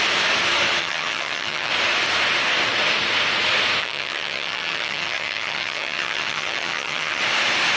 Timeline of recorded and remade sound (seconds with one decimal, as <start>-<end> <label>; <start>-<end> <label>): 0.0-0.8 recorded; 0.8-1.7 remade; 1.7-3.8 recorded; 3.8-7.2 remade; 7.2-7.8 recorded